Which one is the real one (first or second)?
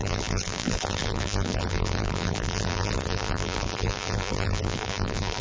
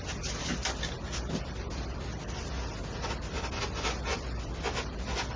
second